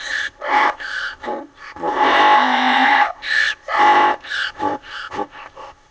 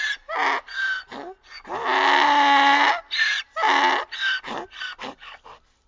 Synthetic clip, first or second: first